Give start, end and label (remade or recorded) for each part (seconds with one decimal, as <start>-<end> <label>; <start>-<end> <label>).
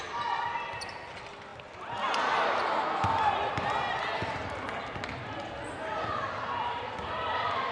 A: 0.0-1.5 remade; 1.5-3.3 recorded; 3.3-4.4 remade; 4.4-6.6 recorded; 6.6-7.7 remade